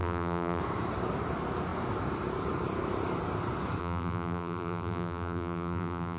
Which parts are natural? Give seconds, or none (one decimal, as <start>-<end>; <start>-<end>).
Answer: 0.6-3.8